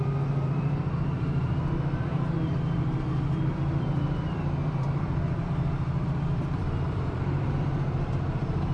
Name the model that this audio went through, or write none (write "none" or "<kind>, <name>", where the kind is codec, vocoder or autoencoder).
vocoder, BigVGAN v2